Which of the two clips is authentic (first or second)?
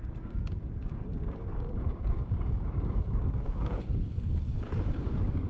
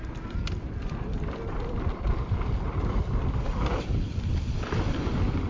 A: second